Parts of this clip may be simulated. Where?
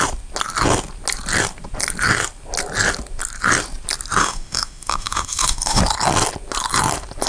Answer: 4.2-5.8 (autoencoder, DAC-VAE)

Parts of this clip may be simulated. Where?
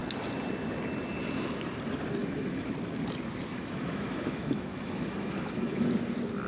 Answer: 2.2-2.7 (autoencoder, DAC-VAE); 3.5-5.9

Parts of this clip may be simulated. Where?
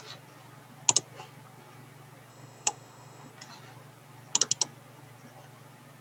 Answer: 2.3-3.3 (autoencoder, DAC-VAE)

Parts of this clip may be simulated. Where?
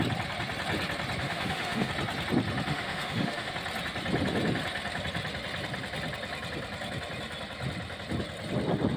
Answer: 1.2-1.9 (autoencoder, DAC-VAE); 2.7-3.5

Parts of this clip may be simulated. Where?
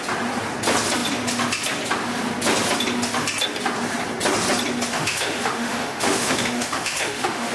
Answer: 4.9-7.5 (autoencoder, DAC-VAE)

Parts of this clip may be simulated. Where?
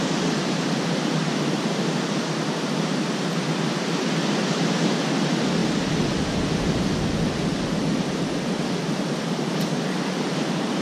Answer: none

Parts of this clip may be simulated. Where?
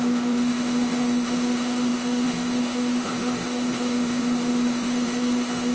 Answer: 0.0-5.7 (autoencoder, DAC-VAE)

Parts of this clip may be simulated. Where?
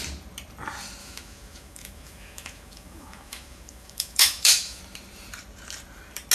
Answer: 1.0-4.8 (autoencoder, DAC-VAE)